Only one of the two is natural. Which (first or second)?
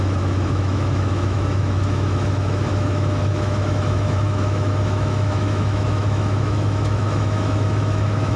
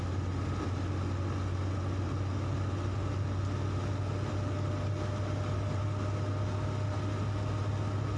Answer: second